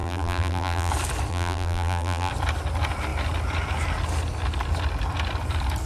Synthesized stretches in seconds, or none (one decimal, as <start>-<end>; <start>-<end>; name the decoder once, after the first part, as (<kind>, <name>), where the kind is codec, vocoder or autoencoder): 0.0-0.9 (vocoder, BigVGAN v2); 1.3-2.3